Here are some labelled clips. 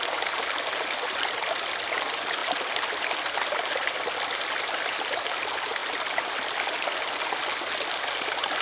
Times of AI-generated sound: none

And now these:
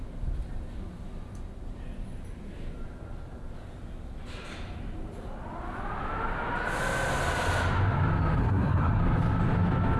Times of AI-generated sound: 8.4-9.0 (codec, SNAC)

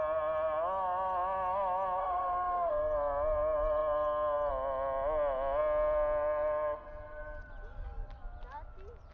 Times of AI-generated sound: 2.0-2.7 (autoencoder, DAC-VAE)

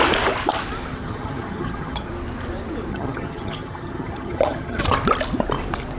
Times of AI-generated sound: 0.9-2.1 (vocoder, HiFi-GAN); 2.9-4.8

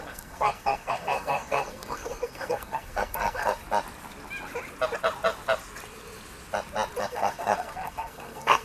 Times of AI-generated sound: 0.0-3.6 (codec, SNAC); 7.0-8.6